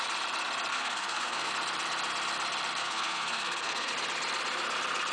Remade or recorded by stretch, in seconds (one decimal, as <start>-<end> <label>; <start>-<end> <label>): 0.0-0.7 recorded; 0.7-1.5 remade; 1.5-2.8 recorded; 2.8-3.9 remade; 3.9-5.1 recorded